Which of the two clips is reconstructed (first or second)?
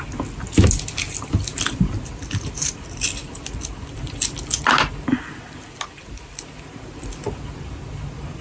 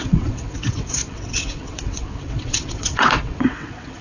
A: second